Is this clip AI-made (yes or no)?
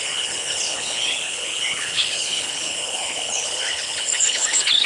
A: yes